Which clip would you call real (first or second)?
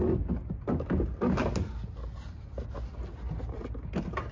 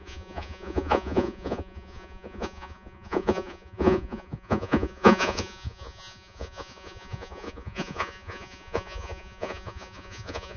first